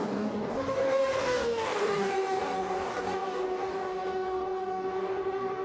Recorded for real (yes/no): no